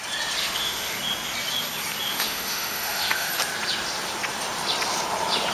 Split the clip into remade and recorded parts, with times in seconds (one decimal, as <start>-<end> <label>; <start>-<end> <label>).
0.0-0.4 recorded; 0.4-1.0 remade; 1.0-2.1 recorded; 2.1-3.3 remade; 3.3-5.5 recorded